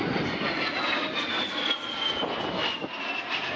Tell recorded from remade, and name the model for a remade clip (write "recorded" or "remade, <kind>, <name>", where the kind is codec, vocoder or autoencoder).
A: recorded